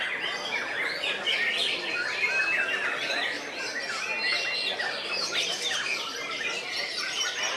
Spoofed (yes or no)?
no